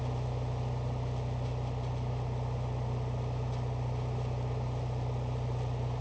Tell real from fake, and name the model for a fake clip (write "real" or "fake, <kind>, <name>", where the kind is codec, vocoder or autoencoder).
real